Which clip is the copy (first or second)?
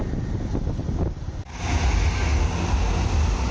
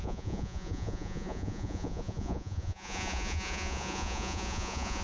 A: second